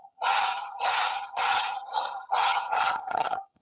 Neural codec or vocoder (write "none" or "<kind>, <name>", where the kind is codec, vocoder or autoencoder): vocoder, HiFi-GAN